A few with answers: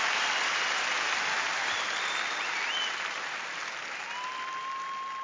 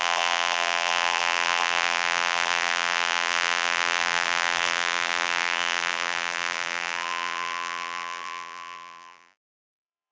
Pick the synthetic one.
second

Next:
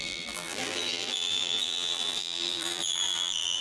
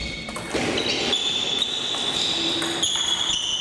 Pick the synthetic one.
first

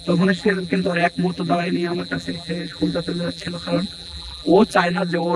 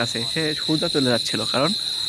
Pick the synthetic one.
first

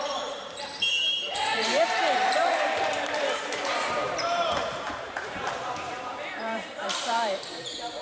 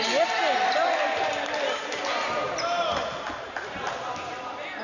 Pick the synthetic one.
first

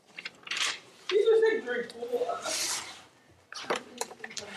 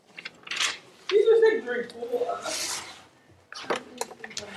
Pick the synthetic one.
first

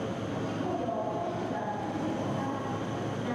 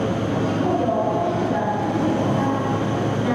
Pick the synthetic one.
first